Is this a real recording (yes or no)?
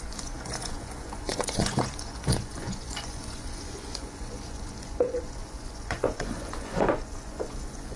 no